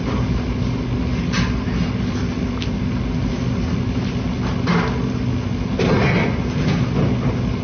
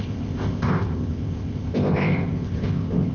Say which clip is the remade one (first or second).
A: second